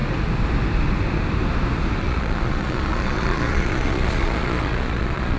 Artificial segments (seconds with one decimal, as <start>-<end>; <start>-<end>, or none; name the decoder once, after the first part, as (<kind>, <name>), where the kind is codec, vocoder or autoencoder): 2.0-5.4 (vocoder, Vocos)